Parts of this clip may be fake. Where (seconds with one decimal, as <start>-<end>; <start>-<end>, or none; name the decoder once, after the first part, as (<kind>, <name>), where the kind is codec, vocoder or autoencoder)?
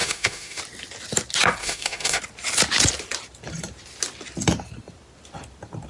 0.0-0.6 (autoencoder, DAC-VAE); 1.6-2.2